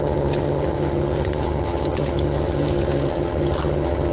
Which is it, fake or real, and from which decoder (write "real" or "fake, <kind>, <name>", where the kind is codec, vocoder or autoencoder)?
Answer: fake, vocoder, HiFi-GAN